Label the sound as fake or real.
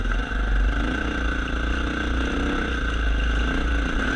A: real